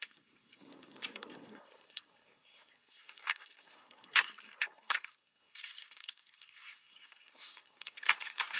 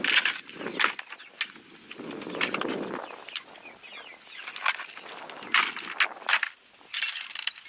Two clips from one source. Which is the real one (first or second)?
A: second